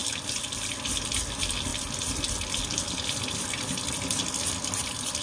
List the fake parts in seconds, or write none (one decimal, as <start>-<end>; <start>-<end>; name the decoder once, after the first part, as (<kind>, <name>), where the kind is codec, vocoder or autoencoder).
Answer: none